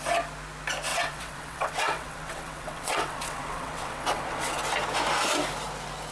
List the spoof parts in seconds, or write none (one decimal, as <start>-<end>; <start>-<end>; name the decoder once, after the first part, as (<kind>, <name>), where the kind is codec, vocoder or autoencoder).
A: 0.9-4.6 (vocoder, WaveNeXt)